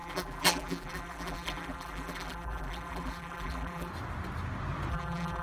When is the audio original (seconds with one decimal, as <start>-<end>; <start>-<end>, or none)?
3.9-4.9